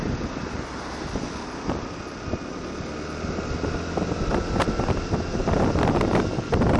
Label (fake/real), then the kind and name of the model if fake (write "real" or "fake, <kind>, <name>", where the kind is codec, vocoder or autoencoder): real